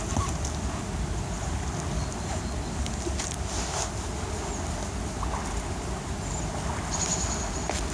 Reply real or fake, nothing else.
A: real